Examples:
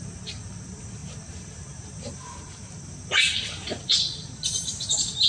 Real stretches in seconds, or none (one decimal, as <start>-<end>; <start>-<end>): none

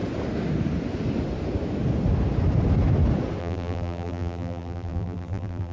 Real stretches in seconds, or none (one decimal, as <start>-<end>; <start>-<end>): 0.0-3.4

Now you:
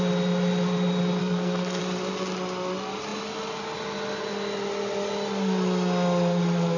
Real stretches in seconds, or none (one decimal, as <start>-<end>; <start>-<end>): 0.0-1.2; 1.8-6.8